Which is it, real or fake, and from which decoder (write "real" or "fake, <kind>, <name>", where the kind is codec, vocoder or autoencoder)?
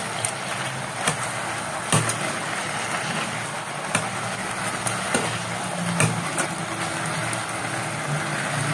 real